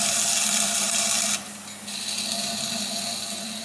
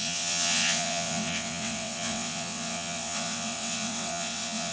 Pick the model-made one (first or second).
second